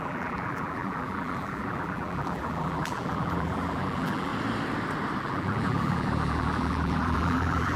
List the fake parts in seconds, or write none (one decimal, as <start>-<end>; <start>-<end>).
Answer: 0.0-4.3; 5.2-7.8